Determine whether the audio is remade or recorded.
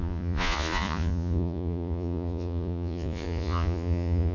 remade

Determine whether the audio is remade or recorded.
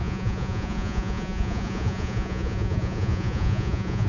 remade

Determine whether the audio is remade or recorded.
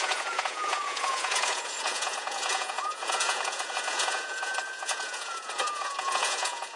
remade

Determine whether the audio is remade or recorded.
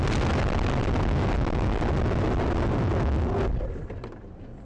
recorded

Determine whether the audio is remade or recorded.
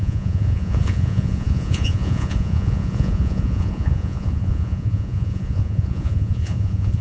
remade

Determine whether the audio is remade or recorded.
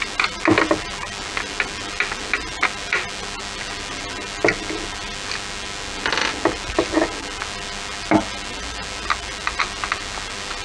recorded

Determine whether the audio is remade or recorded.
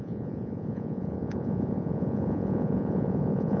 remade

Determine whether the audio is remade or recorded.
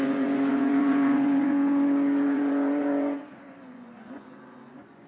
remade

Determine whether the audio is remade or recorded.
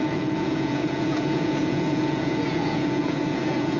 remade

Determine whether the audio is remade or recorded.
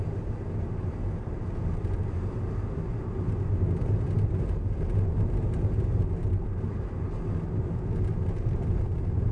recorded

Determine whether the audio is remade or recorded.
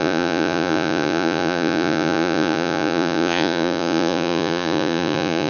remade